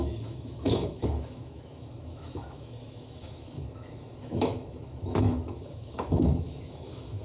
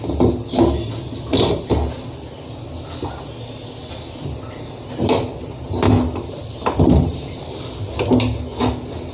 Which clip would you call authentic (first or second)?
second